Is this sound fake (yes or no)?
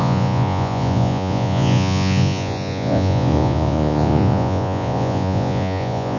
yes